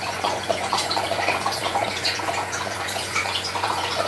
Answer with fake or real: fake